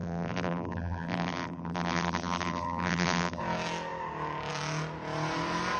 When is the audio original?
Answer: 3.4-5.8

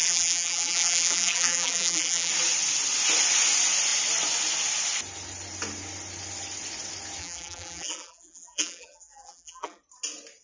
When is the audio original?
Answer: 2.3-7.2; 9.8-10.4